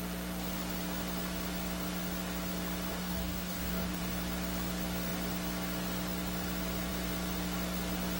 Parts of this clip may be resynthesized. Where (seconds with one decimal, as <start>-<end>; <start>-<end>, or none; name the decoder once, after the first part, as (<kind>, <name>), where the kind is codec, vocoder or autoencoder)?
2.9-4.0 (codec, DAC)